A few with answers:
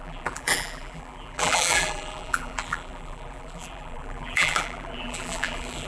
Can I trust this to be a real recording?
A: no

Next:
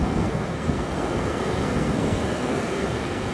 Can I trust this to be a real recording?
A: no